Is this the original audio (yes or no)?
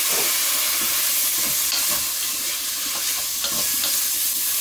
yes